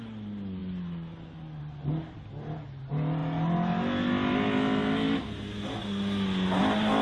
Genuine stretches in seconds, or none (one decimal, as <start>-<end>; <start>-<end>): 0.0-7.0